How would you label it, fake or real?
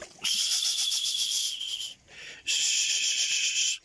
real